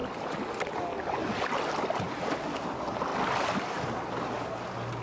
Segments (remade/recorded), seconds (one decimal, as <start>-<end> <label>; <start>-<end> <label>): 0.0-0.7 remade; 0.7-5.0 recorded